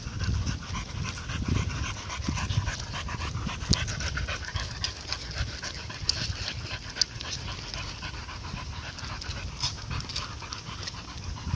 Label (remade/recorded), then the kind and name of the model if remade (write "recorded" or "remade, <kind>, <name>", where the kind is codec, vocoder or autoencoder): recorded